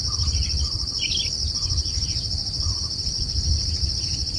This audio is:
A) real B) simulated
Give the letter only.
A